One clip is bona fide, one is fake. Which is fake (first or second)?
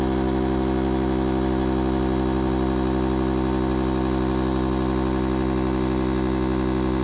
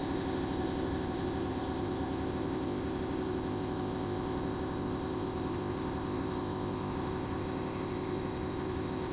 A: second